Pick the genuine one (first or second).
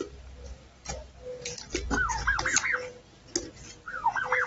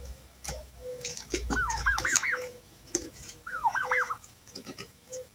first